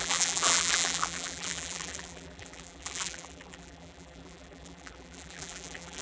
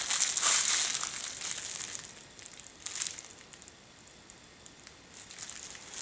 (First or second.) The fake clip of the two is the first